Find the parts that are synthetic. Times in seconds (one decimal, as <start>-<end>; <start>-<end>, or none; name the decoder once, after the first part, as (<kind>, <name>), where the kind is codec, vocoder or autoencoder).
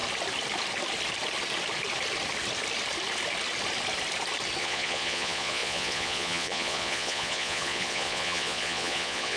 4.6-9.4 (vocoder, Vocos)